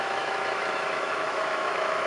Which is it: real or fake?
fake